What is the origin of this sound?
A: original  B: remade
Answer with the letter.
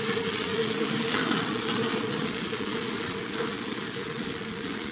B